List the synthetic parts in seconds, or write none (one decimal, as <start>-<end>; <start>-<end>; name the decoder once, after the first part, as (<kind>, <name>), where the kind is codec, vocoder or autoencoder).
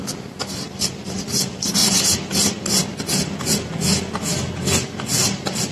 none